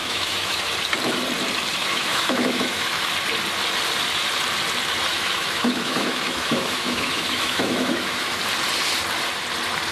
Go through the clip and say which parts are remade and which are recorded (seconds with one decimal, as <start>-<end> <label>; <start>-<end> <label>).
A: 0.0-0.7 remade; 0.7-1.8 recorded; 1.8-3.1 remade; 3.1-5.1 recorded; 5.1-8.4 remade; 8.4-9.9 recorded